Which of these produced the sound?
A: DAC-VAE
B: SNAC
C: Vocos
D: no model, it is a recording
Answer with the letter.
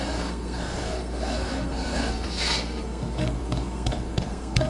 B